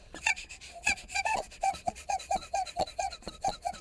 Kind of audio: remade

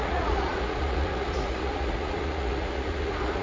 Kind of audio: remade